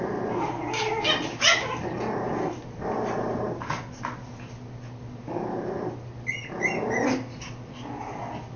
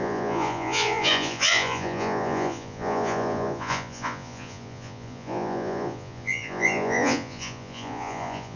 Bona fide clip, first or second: first